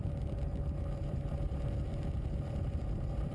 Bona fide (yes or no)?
no